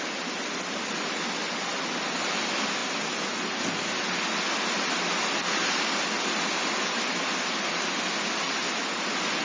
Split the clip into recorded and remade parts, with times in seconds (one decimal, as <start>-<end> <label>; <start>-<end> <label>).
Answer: 0.0-9.4 recorded